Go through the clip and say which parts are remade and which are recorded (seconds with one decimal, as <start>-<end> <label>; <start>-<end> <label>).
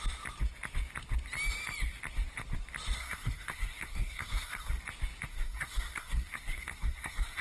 0.0-3.0 recorded; 3.0-4.8 remade; 4.8-5.3 recorded; 5.3-7.4 remade